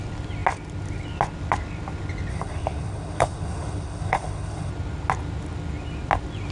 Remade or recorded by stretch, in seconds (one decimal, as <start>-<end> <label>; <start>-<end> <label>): 0.0-2.3 recorded; 2.3-4.7 remade; 4.7-6.5 recorded